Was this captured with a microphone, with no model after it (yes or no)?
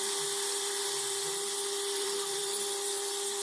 no